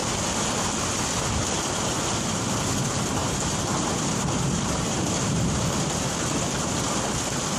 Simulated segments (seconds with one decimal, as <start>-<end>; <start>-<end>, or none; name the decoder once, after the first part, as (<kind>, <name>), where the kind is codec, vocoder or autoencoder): 3.2-5.7 (vocoder, BigVGAN v2)